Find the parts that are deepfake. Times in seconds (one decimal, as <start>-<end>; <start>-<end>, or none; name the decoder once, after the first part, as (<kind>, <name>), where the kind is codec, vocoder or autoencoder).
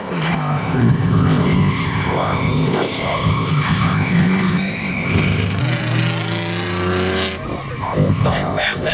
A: 0.0-5.6 (codec, ZipCodec); 7.8-8.9